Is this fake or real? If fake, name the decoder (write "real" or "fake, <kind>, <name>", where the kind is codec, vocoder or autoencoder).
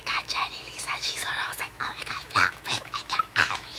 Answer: fake, autoencoder, DAC-VAE